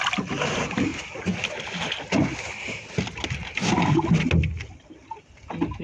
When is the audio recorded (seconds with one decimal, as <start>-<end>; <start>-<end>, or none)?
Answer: 0.0-5.8